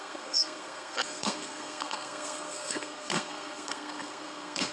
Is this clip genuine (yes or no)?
no